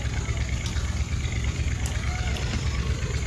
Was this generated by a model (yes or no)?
no